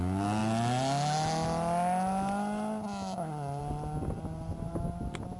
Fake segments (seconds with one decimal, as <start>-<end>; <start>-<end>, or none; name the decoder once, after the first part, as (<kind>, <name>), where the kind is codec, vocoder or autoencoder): none